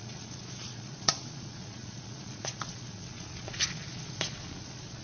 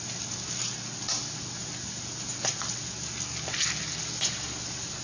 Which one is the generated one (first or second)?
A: first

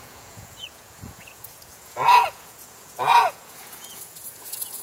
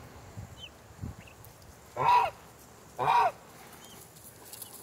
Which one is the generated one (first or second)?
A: first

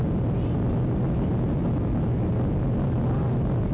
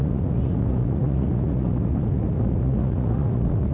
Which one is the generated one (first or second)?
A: second